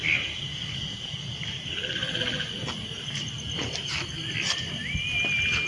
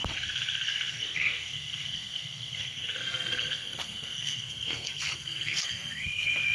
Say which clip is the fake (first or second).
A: second